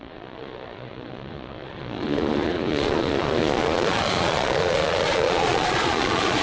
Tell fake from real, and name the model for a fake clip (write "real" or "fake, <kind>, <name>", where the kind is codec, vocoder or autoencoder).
fake, vocoder, Vocos